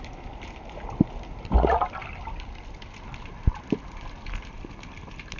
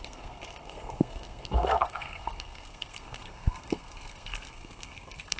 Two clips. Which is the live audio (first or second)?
first